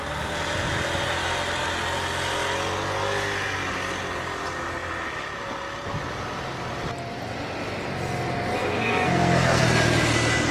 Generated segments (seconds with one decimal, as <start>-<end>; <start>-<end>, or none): 8.6-9.6